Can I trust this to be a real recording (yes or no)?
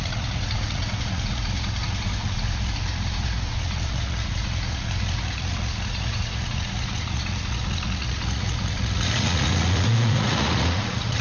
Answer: no